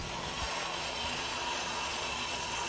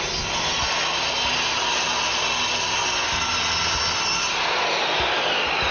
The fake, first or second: first